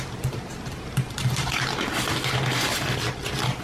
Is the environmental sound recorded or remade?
recorded